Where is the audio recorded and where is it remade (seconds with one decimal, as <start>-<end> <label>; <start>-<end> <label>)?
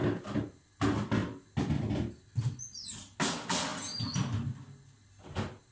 0.0-5.7 recorded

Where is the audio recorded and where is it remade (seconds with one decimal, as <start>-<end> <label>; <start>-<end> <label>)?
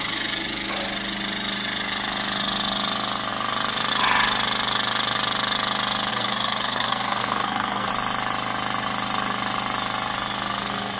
0.0-6.1 recorded; 6.1-7.9 remade; 7.9-11.0 recorded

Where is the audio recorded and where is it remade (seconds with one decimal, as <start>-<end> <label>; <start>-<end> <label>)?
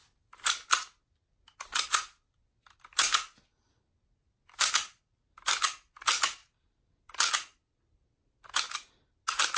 0.0-9.6 recorded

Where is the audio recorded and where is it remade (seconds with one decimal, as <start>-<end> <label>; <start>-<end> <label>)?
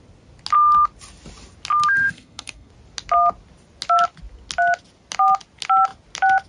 0.0-2.0 recorded; 2.0-2.7 remade; 2.7-6.5 recorded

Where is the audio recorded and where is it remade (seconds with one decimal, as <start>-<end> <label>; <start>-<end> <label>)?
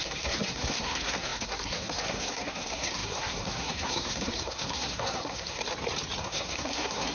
0.0-5.6 remade; 5.6-6.2 recorded; 6.2-7.1 remade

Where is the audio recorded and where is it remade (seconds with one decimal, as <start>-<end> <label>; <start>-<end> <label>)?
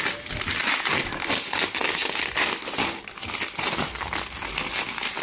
0.0-5.2 recorded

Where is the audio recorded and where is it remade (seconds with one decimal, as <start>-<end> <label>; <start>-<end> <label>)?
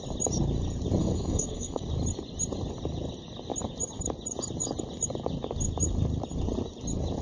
0.0-1.0 recorded; 1.0-1.8 remade; 1.8-7.2 recorded